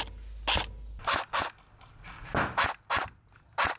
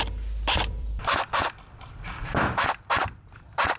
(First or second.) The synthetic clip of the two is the second